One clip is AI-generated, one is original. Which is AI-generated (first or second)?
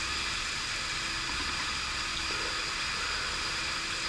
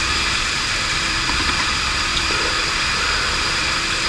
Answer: second